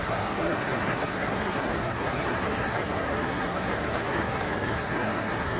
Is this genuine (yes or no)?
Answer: no